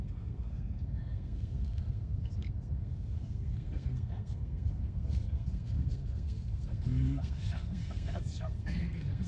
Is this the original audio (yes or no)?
no